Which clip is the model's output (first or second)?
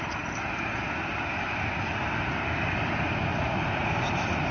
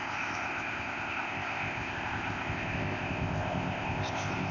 second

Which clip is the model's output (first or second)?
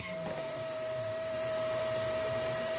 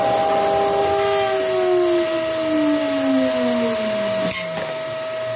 first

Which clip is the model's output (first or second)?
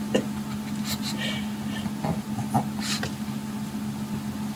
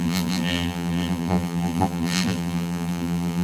second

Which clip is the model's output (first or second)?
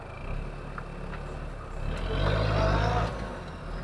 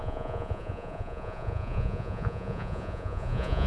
second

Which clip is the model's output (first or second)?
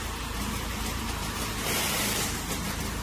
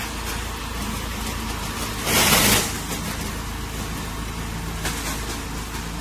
first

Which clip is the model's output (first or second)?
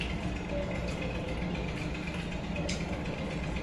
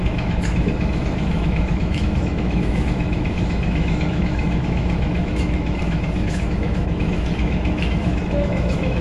second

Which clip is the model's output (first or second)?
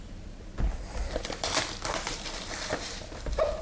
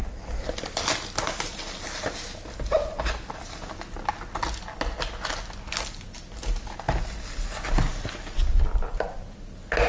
first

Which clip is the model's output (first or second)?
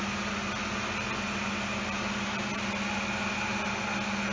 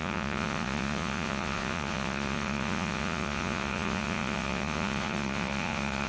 second